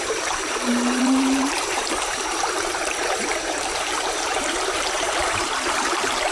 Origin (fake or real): fake